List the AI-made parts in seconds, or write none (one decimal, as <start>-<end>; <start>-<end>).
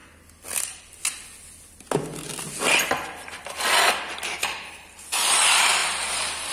3.9-5.8